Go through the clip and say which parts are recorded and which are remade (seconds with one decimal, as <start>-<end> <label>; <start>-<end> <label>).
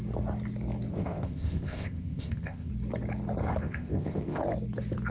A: 0.0-0.9 recorded; 0.9-2.7 remade; 2.7-3.6 recorded; 3.6-4.4 remade; 4.4-5.1 recorded